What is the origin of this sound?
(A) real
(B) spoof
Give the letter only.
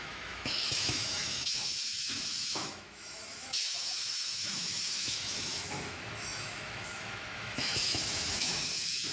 B